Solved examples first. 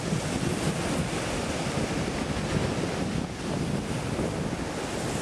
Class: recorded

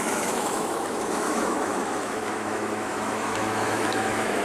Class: remade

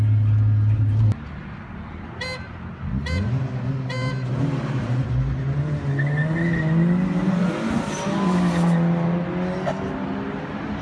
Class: recorded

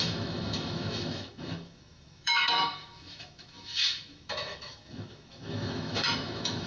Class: remade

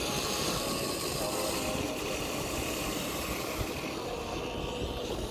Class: recorded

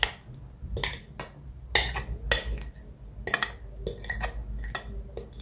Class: recorded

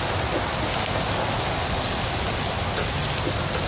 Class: recorded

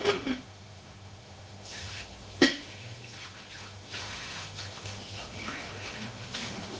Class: remade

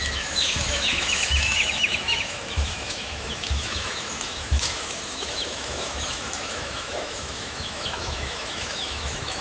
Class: remade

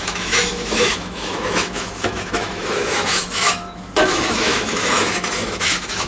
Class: remade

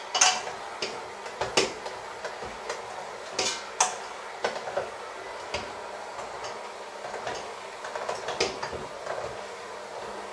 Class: recorded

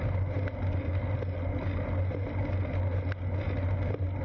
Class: recorded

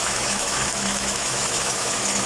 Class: remade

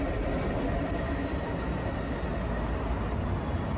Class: recorded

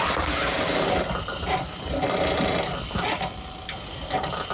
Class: recorded